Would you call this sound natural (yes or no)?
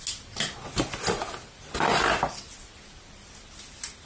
yes